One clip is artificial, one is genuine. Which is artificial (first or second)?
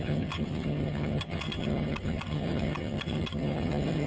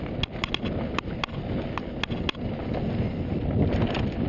first